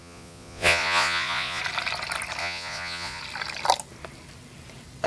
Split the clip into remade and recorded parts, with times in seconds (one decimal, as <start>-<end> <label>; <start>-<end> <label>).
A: 0.0-1.6 remade; 1.6-2.4 recorded; 2.4-3.2 remade; 3.2-5.1 recorded